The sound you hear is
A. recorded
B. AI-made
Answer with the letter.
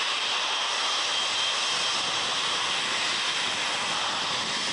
A